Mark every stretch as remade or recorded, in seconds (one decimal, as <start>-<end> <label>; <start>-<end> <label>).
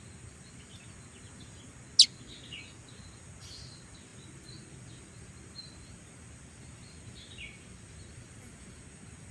0.0-9.3 recorded